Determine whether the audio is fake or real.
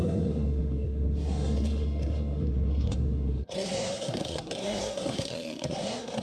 fake